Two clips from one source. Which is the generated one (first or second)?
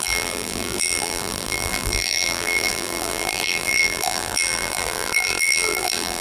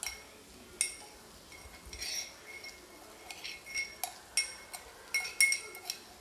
first